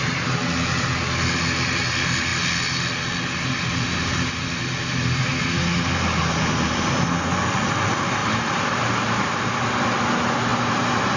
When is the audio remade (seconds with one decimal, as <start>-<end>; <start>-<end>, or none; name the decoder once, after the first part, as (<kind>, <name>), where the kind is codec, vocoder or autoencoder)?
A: 8.2-9.4 (vocoder, BigVGAN v2); 10.5-11.2